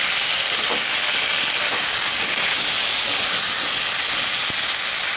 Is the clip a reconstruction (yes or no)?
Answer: no